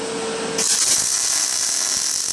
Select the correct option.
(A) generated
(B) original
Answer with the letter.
B